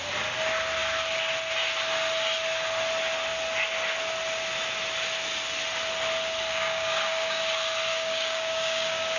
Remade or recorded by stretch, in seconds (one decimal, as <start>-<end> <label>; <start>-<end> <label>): 0.0-6.5 recorded; 6.5-7.4 remade; 7.4-7.9 recorded; 7.9-9.2 remade